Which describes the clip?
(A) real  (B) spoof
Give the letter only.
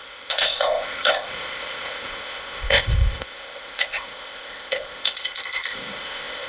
B